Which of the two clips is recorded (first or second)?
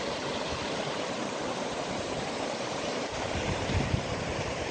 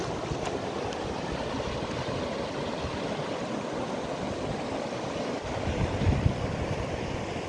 second